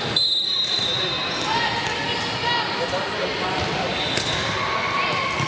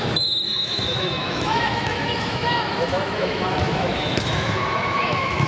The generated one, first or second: second